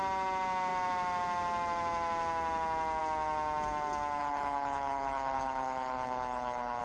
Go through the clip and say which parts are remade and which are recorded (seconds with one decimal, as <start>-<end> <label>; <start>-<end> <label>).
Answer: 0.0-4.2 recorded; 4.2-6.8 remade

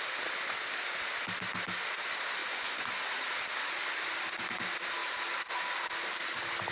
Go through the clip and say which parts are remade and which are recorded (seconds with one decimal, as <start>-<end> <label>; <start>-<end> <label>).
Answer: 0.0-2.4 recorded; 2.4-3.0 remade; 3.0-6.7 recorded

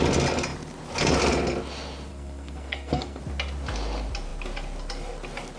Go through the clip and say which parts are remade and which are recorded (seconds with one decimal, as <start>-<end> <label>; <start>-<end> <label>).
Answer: 0.0-2.1 recorded; 2.1-3.2 remade; 3.2-5.6 recorded